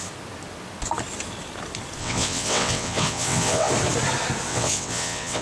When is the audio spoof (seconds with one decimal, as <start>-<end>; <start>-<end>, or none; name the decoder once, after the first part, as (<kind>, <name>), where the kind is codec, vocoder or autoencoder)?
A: 2.0-3.7 (vocoder, WaveNeXt); 4.5-5.4